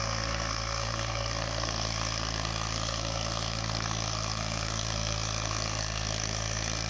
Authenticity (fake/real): fake